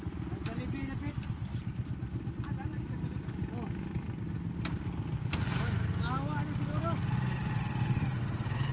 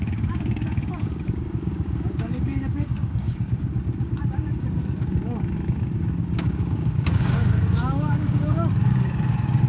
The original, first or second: first